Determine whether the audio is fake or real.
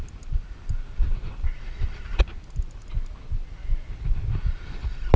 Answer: real